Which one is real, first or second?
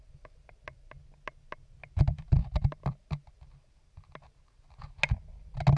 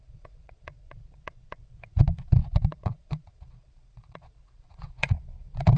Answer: first